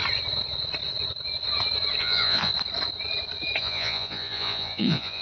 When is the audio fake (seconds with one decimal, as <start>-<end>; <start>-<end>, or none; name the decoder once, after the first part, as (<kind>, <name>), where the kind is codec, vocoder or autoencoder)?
2.0-2.5 (vocoder, Vocos); 3.6-5.2